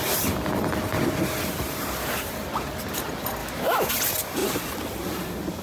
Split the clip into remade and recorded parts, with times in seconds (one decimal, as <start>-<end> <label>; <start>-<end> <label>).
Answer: 0.0-3.4 recorded; 3.4-3.9 remade; 3.9-5.6 recorded